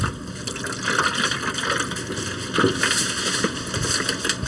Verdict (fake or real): real